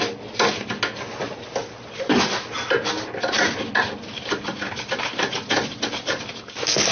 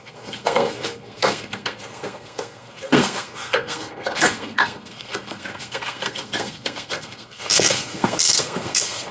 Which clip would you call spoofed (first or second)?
second